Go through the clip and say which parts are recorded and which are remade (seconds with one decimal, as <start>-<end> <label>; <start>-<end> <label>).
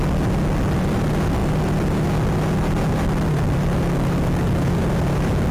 0.0-5.5 recorded